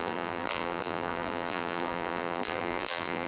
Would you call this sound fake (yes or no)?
yes